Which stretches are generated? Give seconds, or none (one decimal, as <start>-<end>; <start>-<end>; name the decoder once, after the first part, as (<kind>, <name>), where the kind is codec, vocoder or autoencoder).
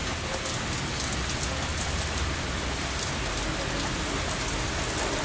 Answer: none